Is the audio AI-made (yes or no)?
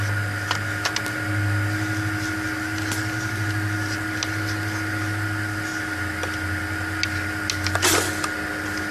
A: no